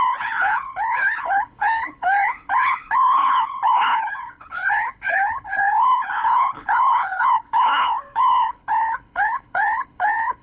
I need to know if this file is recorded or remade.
remade